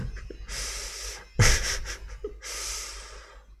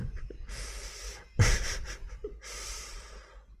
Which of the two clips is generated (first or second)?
second